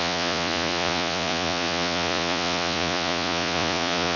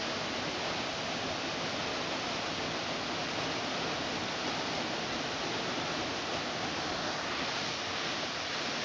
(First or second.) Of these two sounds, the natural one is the second